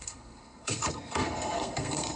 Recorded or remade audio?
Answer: remade